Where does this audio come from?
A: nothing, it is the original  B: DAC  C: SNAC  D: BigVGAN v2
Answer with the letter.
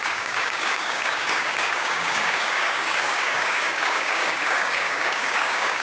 B